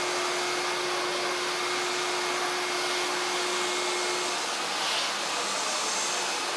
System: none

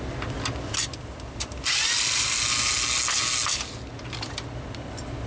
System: none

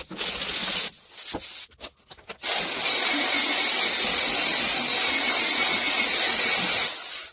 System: none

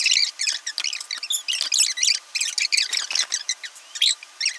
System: none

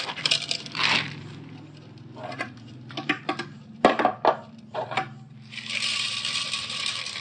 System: vocoder, BigVGAN v2